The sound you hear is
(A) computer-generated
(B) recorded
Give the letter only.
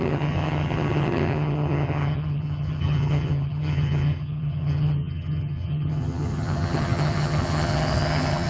A